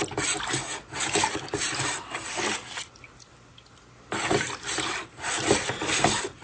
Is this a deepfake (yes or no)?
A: no